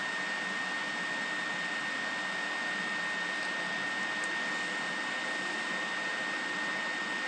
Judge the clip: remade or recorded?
recorded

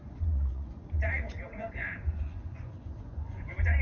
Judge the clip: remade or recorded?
remade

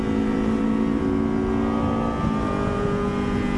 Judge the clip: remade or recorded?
recorded